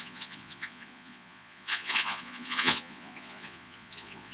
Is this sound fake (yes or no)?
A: yes